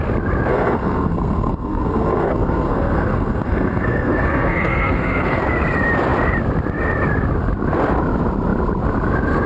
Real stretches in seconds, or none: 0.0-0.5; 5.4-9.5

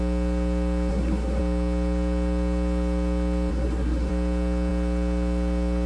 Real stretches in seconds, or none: 0.0-0.9; 1.4-3.5; 4.1-5.9

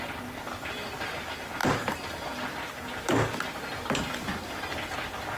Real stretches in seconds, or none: 0.0-5.4

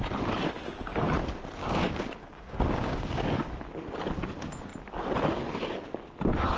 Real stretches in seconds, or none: 0.0-1.6; 3.5-6.6

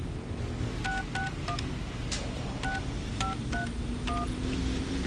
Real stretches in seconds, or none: 0.0-5.1

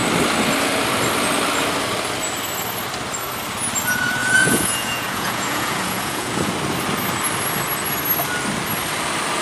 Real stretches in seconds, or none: 0.0-4.2; 6.5-9.4

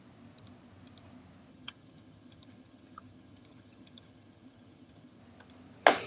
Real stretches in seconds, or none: 0.0-1.5; 5.2-6.1

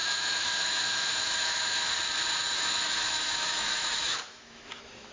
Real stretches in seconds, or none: 2.0-2.5